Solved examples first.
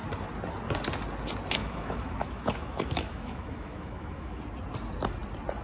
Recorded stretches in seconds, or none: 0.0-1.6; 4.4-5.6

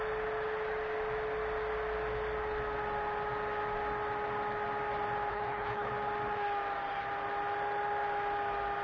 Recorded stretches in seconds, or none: 0.0-5.3; 5.9-8.8

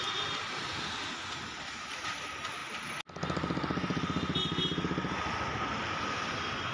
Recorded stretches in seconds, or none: 0.0-6.7

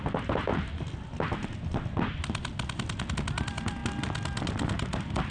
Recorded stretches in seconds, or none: 0.0-5.3

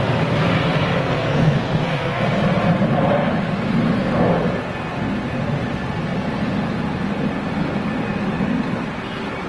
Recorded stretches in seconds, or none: 0.0-1.0; 2.2-9.5